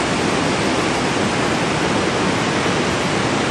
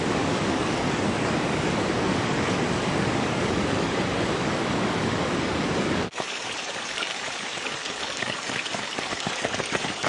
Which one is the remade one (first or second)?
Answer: second